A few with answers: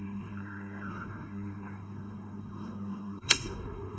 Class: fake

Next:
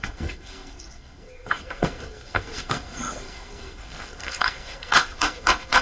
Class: fake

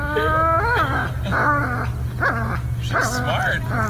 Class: real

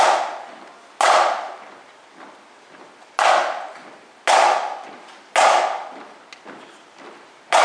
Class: real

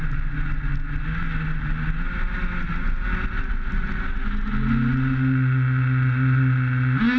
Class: real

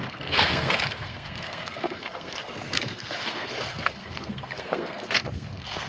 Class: fake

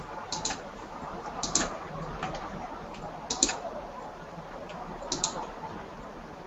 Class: real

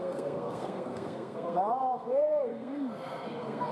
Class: fake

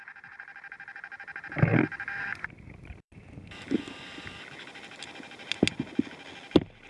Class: real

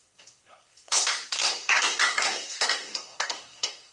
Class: fake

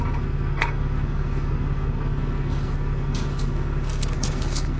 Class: fake